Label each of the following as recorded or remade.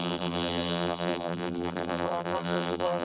remade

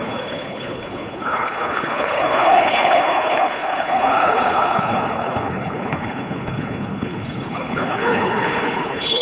remade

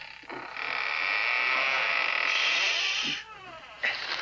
recorded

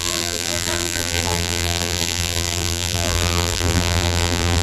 remade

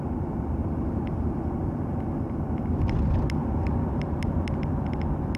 recorded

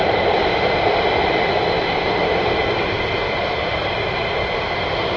recorded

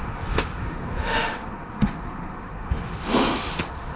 remade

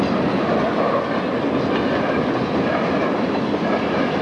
recorded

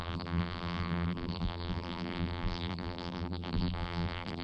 remade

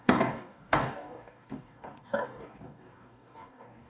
remade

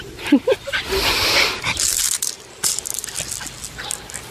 recorded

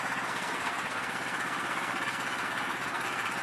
remade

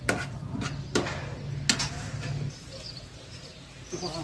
recorded